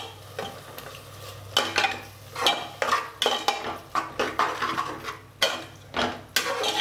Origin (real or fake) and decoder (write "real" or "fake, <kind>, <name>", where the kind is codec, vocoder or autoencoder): real